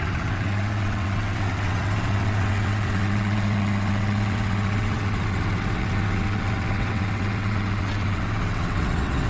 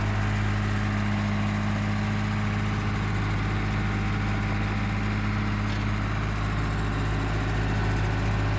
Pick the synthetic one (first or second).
first